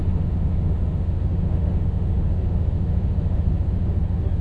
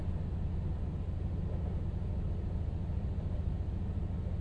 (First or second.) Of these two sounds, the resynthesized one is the first